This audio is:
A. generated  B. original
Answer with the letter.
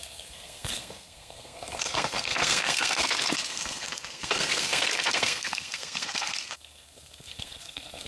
A